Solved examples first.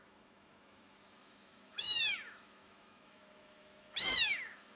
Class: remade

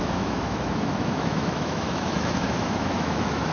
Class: remade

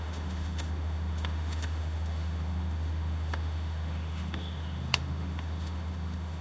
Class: remade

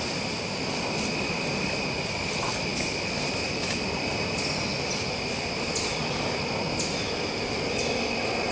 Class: recorded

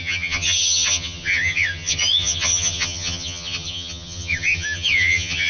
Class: remade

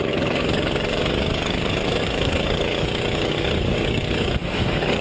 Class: remade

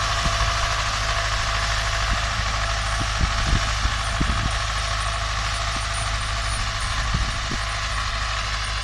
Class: recorded